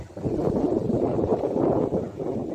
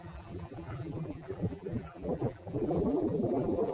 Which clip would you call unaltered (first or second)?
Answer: first